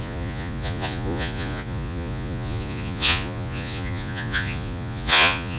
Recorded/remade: remade